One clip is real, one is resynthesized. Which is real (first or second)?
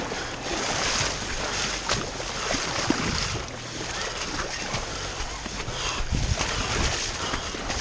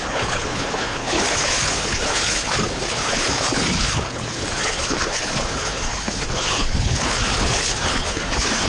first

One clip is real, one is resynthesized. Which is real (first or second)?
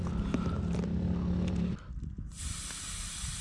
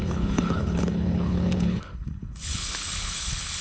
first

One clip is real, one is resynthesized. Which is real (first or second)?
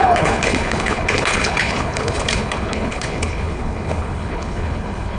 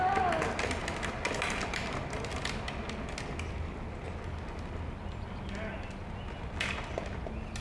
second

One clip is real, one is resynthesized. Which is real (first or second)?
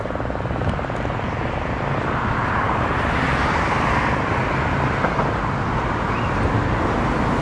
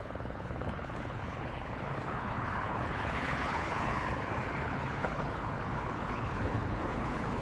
first